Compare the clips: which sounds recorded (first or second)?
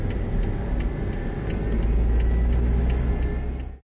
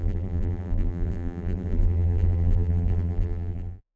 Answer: first